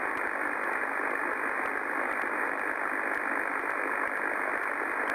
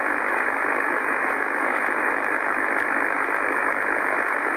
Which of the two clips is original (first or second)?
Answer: first